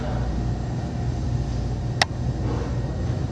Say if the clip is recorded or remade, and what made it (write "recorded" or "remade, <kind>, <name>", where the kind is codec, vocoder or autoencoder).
recorded